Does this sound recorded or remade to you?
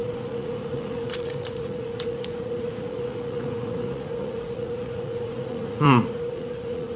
remade